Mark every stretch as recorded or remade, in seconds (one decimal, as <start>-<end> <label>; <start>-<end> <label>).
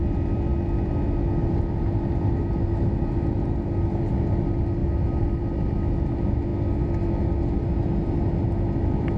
0.0-9.2 recorded